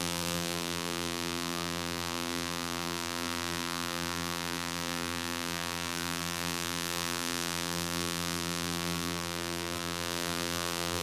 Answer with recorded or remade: remade